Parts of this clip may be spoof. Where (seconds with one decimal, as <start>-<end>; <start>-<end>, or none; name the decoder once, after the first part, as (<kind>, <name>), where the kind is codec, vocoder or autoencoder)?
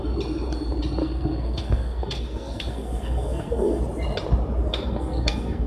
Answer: 1.0-3.8 (codec, SNAC); 4.7-5.7